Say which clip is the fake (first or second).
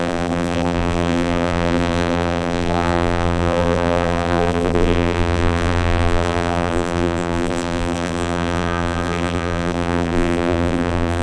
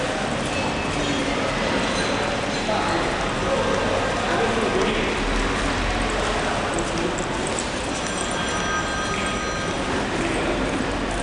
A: first